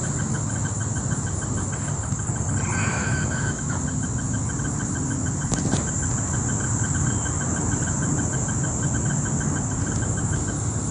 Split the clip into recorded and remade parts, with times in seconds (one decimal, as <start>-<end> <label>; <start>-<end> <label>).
0.0-2.8 recorded; 2.8-3.7 remade; 3.7-10.9 recorded